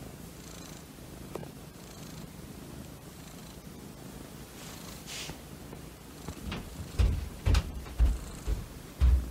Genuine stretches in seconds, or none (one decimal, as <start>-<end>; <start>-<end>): 3.4-5.3; 8.5-9.3